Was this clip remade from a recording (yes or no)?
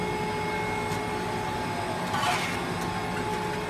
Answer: no